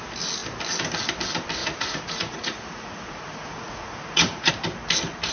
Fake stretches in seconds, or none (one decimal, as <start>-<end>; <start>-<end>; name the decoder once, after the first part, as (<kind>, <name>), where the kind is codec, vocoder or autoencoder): 1.6-4.5 (vocoder, Vocos)